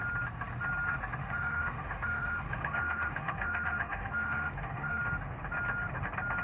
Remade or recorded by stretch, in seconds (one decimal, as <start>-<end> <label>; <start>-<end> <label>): 0.0-1.2 recorded; 1.2-5.0 remade; 5.0-6.4 recorded